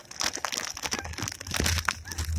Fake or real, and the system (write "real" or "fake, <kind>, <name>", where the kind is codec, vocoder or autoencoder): real